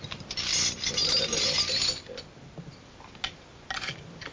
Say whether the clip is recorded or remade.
recorded